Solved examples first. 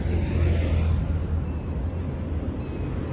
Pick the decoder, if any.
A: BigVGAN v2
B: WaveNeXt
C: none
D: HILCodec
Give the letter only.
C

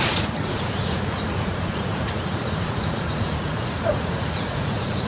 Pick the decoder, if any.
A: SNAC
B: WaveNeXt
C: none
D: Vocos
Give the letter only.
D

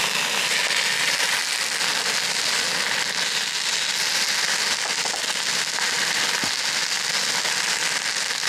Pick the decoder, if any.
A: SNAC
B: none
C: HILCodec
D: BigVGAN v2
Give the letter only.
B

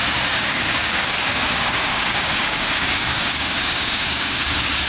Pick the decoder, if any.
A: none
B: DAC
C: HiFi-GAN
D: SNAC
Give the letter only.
B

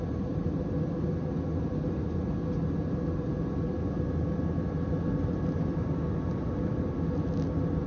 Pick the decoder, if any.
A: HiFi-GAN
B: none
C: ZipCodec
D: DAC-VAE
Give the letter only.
B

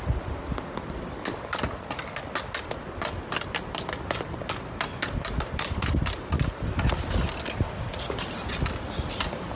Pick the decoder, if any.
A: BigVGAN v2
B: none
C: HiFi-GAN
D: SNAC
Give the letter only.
B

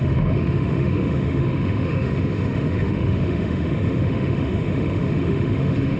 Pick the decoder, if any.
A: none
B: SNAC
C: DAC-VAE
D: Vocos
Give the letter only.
C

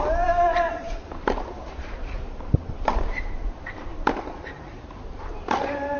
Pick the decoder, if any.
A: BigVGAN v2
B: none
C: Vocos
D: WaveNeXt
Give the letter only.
A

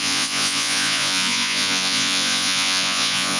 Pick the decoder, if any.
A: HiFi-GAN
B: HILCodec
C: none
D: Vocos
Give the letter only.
D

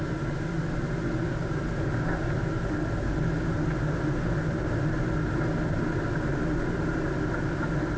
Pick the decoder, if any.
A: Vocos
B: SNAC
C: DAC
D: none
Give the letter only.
D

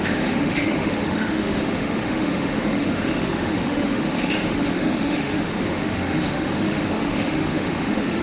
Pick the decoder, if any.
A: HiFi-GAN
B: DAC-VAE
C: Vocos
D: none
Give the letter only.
B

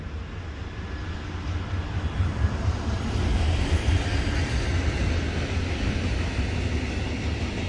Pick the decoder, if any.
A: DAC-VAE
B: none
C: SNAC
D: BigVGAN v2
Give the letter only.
B